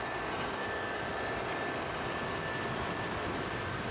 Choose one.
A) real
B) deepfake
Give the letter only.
A